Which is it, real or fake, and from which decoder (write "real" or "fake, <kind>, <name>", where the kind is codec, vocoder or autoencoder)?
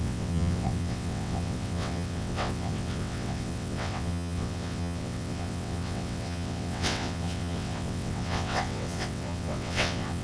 fake, vocoder, WaveNeXt